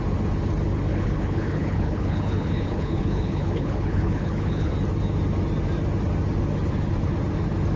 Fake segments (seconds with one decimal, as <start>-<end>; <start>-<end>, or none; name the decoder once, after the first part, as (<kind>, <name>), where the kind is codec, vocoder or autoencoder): 0.9-4.7 (codec, HILCodec)

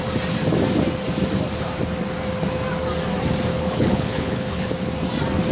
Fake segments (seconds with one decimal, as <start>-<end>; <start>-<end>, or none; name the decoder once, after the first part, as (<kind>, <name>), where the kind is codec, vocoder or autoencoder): 3.5-4.7 (codec, HILCodec)